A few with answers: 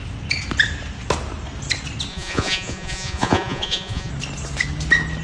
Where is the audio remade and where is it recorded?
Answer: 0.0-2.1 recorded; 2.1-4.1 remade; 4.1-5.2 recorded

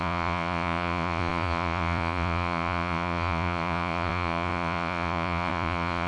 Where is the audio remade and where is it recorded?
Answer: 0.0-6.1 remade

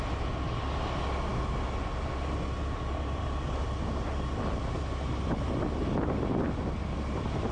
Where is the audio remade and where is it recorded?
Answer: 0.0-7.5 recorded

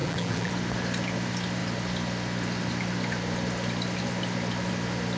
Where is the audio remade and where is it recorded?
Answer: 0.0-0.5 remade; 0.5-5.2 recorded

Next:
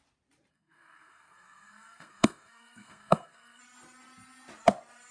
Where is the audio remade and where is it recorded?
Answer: 0.0-0.5 recorded; 0.5-3.6 remade; 3.6-5.1 recorded

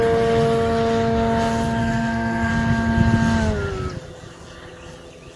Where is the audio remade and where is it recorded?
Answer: 0.0-1.8 recorded; 1.8-2.5 remade; 2.5-5.4 recorded

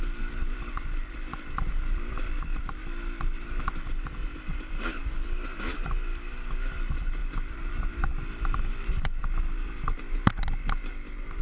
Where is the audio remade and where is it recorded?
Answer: 0.0-0.4 recorded; 0.4-2.8 remade; 2.8-4.2 recorded; 4.2-5.0 remade; 5.0-7.2 recorded; 7.2-8.7 remade; 8.7-11.4 recorded